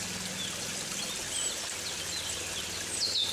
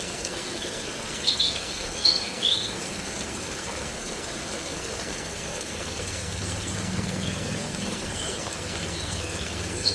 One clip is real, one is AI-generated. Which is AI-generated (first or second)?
second